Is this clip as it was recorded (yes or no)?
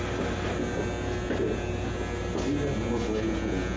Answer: yes